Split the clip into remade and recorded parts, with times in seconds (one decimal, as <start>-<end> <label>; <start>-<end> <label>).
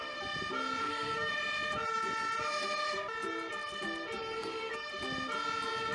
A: 0.0-0.8 recorded; 0.8-1.3 remade; 1.3-4.2 recorded; 4.2-4.9 remade; 4.9-5.9 recorded